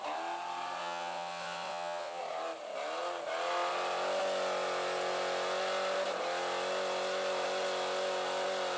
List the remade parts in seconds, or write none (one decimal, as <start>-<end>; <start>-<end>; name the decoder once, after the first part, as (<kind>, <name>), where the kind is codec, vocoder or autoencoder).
0.8-2.2 (vocoder, WaveNeXt)